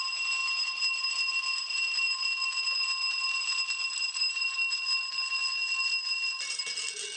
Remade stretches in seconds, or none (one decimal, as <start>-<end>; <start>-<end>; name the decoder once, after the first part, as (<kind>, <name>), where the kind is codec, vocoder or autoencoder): none